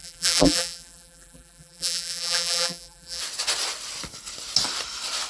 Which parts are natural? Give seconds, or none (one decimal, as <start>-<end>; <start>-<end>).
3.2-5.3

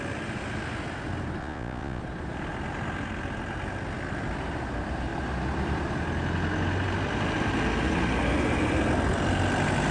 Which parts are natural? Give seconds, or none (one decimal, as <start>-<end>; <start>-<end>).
0.0-1.4; 2.0-9.9

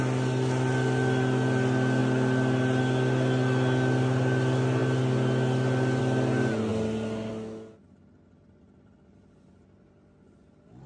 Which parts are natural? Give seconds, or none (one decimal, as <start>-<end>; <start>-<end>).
0.0-10.9

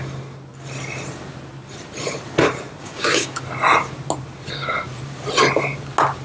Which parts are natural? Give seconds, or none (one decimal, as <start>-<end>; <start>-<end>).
0.0-2.8; 3.4-6.2

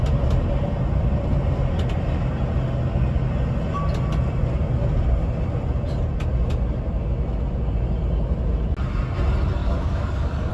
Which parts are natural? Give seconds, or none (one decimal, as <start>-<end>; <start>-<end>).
0.0-9.6